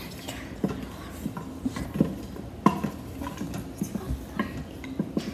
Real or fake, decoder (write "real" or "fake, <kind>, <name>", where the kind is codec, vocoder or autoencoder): real